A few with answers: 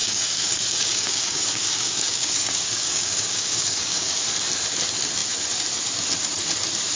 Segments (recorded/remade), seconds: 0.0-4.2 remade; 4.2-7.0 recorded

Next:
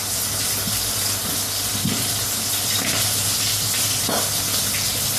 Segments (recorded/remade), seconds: 0.0-5.2 recorded